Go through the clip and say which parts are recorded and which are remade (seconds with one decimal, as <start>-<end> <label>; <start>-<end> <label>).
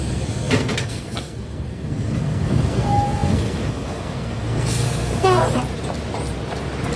0.0-5.4 remade; 5.4-7.0 recorded